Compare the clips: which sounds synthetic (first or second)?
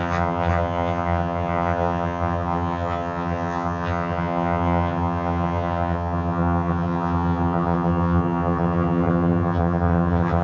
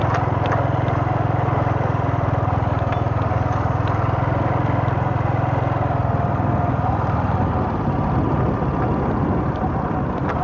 first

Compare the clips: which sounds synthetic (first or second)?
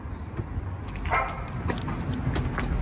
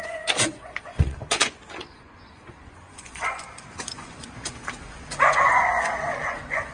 second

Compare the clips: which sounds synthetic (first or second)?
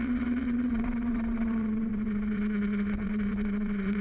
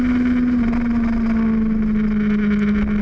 first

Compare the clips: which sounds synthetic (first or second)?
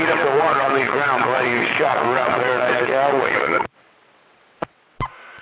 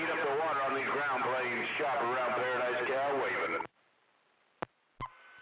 first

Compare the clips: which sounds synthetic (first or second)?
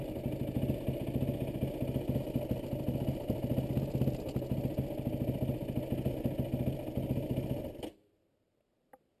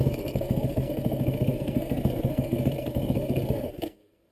second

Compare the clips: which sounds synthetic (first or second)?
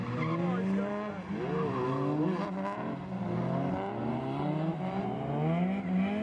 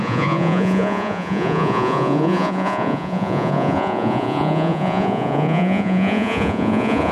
second